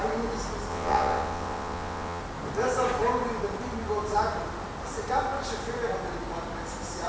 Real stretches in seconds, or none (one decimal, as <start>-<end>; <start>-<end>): 0.0-0.7; 2.2-7.1